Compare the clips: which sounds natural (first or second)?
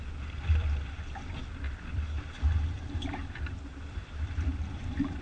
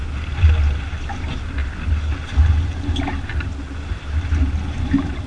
second